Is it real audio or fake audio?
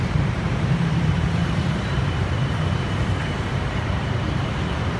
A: fake